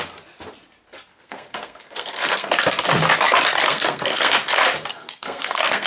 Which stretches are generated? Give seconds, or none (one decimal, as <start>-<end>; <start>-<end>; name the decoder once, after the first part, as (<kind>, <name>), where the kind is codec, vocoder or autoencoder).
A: 1.1-2.5 (codec, SNAC); 3.7-4.3; 4.9-5.9

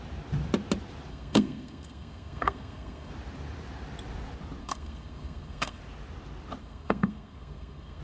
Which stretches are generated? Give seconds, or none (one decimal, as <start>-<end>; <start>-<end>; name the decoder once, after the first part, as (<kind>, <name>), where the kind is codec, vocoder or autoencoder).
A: 1.1-3.1 (codec, SNAC); 4.6-5.8; 6.6-8.0

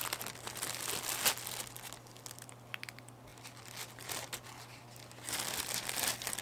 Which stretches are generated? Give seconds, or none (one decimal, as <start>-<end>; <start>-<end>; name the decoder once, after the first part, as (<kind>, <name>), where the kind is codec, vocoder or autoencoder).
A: none

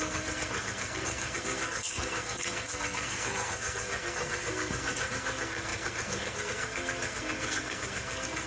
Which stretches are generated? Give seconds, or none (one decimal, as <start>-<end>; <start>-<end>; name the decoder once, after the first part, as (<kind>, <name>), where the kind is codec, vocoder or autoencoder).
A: 0.0-8.5 (codec, SNAC)

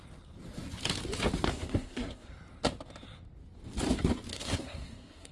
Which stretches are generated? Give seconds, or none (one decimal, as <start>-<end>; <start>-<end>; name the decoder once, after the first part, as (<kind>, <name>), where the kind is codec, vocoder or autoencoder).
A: 1.5-2.3 (codec, SNAC); 4.3-5.3

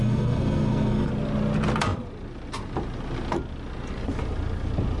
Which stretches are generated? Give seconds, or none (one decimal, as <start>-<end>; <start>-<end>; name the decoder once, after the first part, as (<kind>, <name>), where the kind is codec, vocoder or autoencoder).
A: 0.0-1.1 (codec, SNAC)